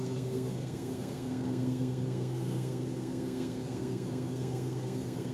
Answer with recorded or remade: remade